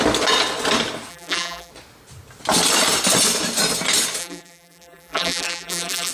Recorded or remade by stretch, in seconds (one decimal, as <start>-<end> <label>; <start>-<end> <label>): 0.0-1.1 recorded; 1.1-1.7 remade; 1.7-4.2 recorded; 4.2-6.1 remade